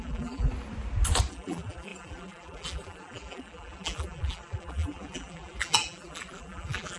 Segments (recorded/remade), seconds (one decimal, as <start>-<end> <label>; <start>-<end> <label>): 0.0-0.5 remade; 0.5-1.3 recorded; 1.3-7.0 remade